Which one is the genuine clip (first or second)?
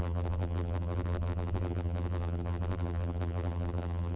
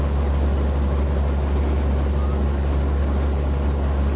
second